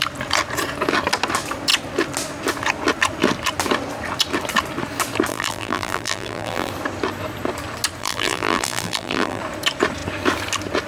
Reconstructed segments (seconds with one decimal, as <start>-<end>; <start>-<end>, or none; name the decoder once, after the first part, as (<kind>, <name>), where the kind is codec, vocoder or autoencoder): 5.3-6.7 (vocoder, BigVGAN v2); 8.0-9.4